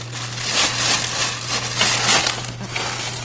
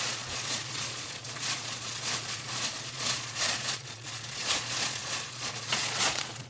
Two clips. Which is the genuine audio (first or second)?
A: first